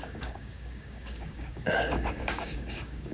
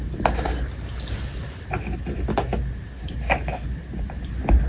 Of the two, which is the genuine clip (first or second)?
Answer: second